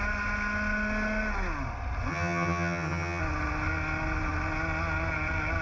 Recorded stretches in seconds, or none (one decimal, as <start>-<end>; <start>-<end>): 0.0-2.1; 3.2-5.6